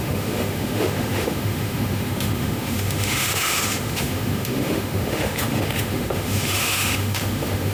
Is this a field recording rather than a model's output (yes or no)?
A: no